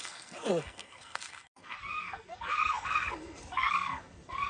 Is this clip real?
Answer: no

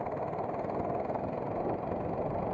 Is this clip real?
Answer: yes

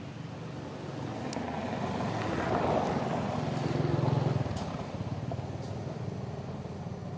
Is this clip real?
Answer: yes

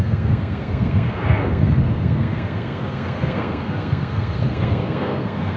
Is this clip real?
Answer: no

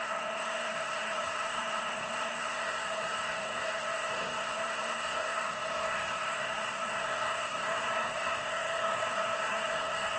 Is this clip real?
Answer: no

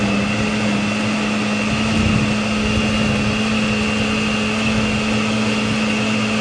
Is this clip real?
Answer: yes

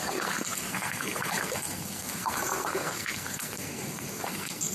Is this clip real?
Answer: no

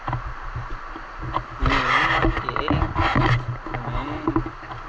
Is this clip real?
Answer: yes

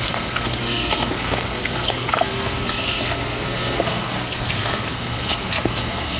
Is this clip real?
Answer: no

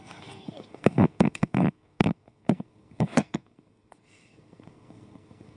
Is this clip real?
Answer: no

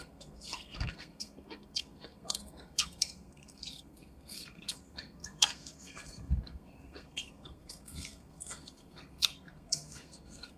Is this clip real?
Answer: no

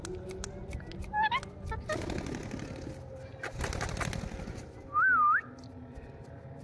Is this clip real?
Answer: yes